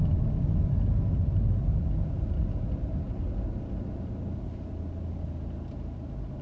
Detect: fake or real real